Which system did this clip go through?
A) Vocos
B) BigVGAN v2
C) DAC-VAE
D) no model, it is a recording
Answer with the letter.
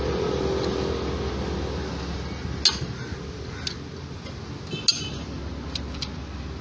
D